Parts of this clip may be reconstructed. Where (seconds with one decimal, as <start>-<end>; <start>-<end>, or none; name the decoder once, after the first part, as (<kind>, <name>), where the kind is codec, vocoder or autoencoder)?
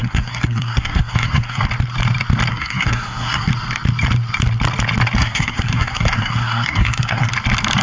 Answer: 0.0-1.6 (codec, SNAC); 2.5-3.5; 5.2-7.3